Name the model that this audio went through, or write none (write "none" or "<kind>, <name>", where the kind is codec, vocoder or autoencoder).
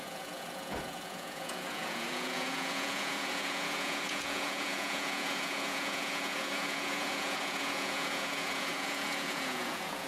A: vocoder, Vocos